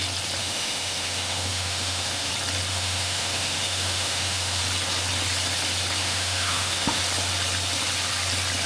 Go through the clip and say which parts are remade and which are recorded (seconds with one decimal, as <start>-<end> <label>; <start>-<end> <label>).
0.0-0.4 recorded; 0.4-2.3 remade; 2.3-2.7 recorded; 2.7-4.6 remade; 4.6-6.0 recorded; 6.0-7.0 remade; 7.0-8.7 recorded